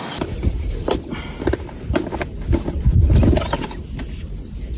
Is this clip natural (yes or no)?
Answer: yes